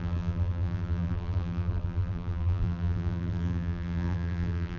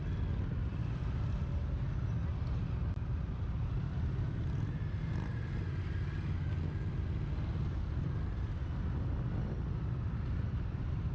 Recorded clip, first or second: second